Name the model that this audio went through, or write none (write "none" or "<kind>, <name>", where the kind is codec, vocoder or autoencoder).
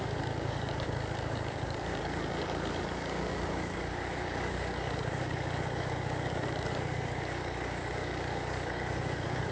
codec, DAC